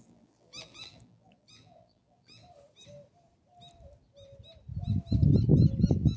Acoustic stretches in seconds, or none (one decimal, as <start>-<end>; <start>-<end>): 2.4-5.8